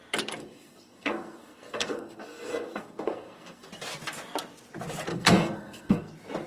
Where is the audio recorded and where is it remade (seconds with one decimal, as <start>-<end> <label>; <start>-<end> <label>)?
0.0-0.4 recorded; 0.4-3.7 remade; 3.7-5.1 recorded; 5.1-6.1 remade; 6.1-6.5 recorded